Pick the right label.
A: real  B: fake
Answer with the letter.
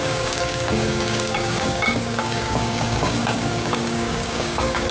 B